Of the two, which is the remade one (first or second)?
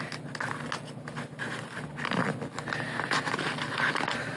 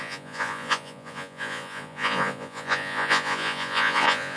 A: second